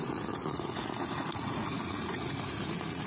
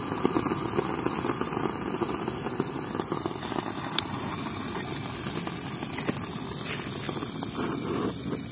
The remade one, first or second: first